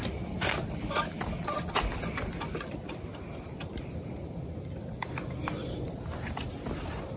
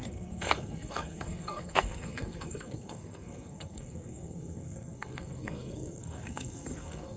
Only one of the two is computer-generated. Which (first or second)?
second